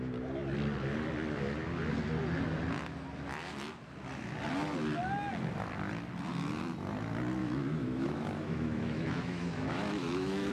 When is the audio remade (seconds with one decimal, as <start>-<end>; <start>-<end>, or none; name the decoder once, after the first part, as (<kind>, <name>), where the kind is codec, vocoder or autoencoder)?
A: 7.4-10.5 (autoencoder, DAC-VAE)